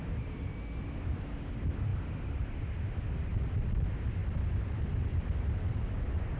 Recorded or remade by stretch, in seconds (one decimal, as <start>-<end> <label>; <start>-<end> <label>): 0.0-4.2 recorded; 4.2-5.8 remade; 5.8-6.4 recorded